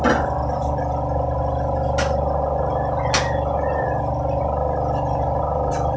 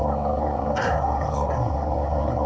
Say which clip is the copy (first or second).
second